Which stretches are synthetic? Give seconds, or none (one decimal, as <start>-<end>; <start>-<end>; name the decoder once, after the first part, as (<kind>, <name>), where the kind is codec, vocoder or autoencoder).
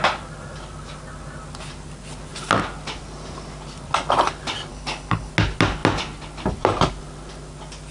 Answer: 4.7-5.3 (codec, HILCodec)